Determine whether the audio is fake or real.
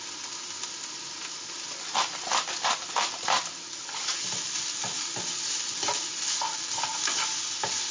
real